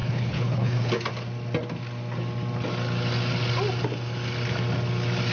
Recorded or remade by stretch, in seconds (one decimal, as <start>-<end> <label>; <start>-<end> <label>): 0.0-0.9 remade; 0.9-5.3 recorded